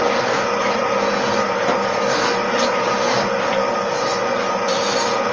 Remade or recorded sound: recorded